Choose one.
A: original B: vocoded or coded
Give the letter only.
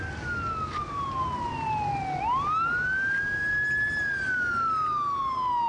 A